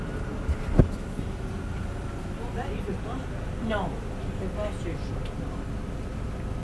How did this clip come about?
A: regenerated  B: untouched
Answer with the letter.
B